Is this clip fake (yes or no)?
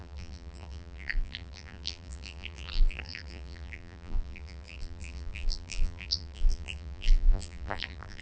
yes